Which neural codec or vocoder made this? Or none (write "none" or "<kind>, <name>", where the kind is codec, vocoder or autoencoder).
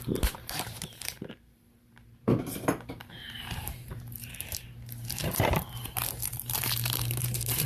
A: vocoder, BigVGAN v2